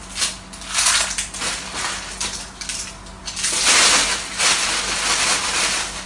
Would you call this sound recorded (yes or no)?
yes